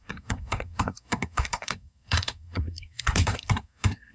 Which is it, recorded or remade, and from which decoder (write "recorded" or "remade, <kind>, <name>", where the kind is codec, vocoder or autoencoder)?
remade, codec, SNAC